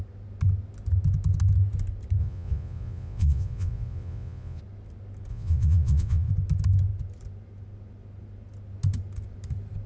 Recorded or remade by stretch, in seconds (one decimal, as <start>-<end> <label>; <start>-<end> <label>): 0.0-2.2 recorded; 2.2-4.6 remade; 4.6-5.3 recorded; 5.3-6.3 remade; 6.3-9.9 recorded